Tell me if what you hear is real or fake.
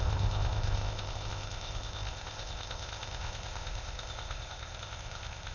fake